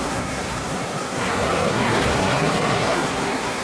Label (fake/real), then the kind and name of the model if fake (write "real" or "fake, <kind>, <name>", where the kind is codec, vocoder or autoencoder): fake, codec, SNAC